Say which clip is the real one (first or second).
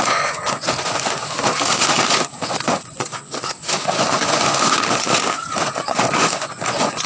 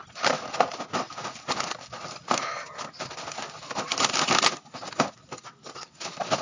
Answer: second